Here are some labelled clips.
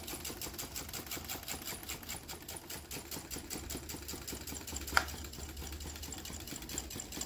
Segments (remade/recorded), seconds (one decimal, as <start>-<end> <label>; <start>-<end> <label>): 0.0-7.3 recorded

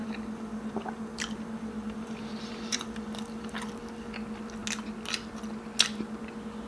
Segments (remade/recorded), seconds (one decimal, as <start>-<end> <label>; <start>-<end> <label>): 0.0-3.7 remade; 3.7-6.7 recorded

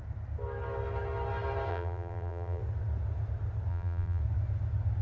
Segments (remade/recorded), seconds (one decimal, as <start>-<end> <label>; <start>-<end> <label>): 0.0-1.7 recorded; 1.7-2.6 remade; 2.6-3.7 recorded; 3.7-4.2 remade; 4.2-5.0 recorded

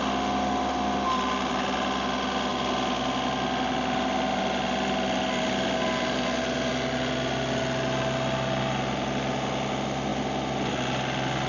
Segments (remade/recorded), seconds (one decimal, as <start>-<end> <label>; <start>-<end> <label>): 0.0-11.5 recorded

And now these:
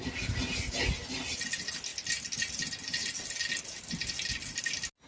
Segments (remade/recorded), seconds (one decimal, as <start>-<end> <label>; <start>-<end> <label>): 0.0-5.1 recorded